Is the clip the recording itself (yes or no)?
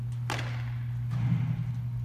yes